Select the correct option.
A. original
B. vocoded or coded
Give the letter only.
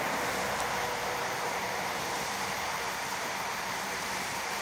B